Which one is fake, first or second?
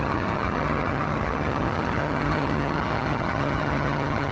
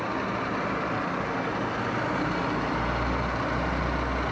first